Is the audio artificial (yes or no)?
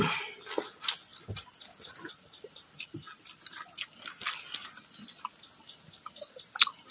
no